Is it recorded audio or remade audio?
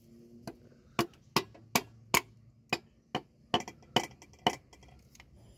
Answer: recorded